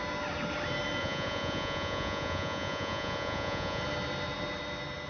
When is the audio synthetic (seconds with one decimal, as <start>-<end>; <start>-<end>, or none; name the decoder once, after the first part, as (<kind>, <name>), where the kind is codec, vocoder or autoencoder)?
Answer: 1.0-3.8 (vocoder, Vocos)